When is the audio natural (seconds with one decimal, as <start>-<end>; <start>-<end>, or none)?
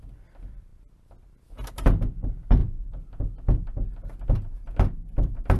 0.7-1.7; 2.6-4.9